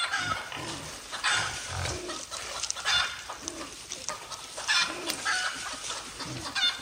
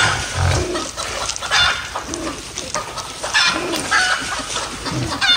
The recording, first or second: second